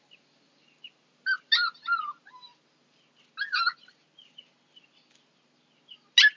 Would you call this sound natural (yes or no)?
yes